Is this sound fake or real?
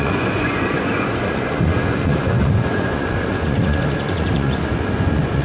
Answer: fake